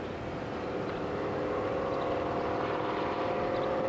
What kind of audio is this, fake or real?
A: real